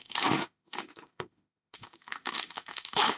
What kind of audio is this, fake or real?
fake